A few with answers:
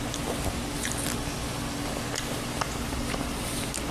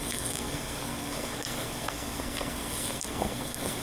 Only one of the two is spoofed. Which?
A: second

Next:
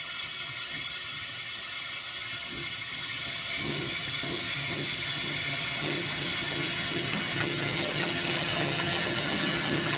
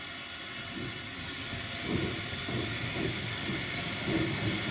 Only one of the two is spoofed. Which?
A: first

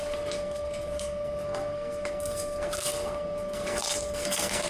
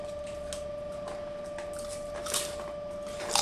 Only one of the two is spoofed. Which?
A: first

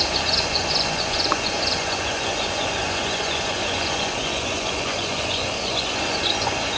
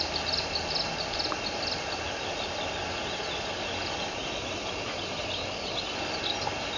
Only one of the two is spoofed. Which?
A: first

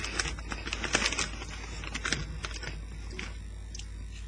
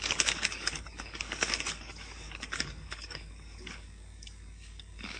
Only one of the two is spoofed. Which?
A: second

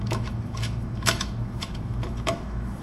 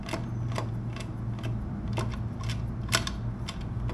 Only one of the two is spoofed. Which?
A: first